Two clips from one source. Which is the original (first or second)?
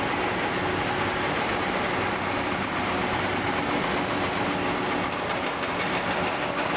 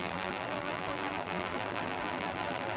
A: first